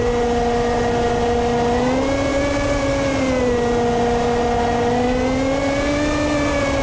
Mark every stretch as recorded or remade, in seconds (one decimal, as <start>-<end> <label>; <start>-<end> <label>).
0.0-6.8 recorded